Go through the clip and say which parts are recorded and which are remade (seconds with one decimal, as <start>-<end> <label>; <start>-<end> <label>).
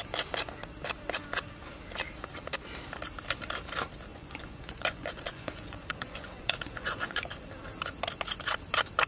0.0-4.1 recorded; 4.1-7.3 remade; 7.3-9.1 recorded